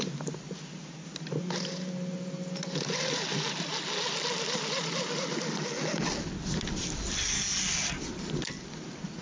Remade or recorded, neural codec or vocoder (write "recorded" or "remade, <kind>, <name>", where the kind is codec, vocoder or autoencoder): recorded